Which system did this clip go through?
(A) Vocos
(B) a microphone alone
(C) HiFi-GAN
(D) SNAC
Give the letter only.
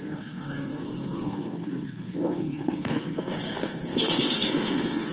D